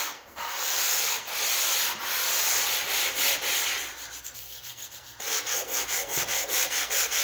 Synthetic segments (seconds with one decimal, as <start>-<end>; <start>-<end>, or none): 0.0-1.3; 4.2-7.2